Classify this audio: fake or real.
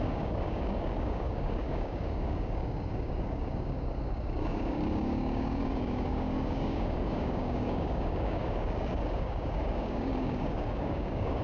fake